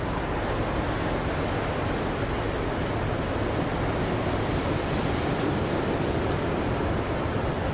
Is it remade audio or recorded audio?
recorded